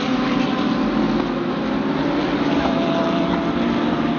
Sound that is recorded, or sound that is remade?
recorded